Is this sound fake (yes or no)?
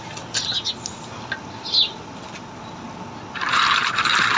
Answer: no